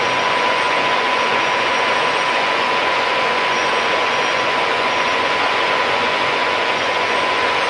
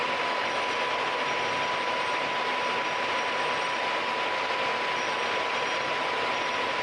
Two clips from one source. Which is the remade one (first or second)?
first